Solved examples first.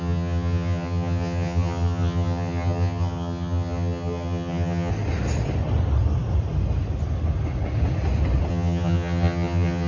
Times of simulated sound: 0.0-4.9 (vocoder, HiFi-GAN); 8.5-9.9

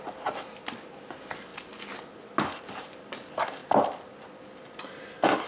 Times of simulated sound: none